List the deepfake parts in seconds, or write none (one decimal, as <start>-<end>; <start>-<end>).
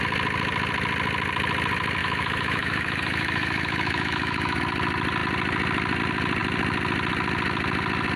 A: 2.0-4.6